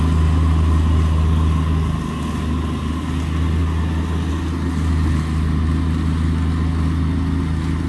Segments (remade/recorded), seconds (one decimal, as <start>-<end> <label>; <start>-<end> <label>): 0.0-7.9 recorded